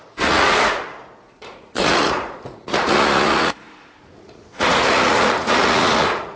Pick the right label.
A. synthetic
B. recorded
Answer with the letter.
A